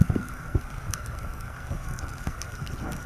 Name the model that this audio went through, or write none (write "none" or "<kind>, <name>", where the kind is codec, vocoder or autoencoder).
codec, SNAC